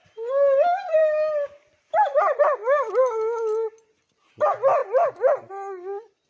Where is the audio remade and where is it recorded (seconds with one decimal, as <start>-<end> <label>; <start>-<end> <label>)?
0.0-6.3 recorded

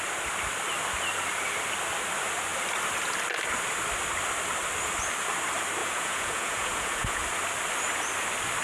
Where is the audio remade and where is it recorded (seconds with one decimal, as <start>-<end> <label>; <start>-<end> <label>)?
0.0-5.8 recorded; 5.8-7.2 remade; 7.2-8.6 recorded